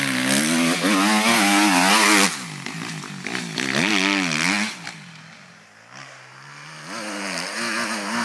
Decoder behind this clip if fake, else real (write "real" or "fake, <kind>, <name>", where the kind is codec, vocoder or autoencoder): real